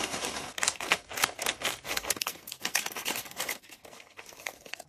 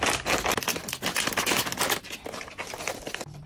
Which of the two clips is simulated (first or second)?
first